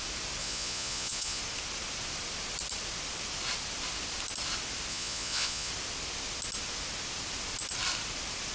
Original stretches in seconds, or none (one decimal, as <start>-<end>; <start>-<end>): 0.0-0.4; 1.4-4.9; 5.7-8.5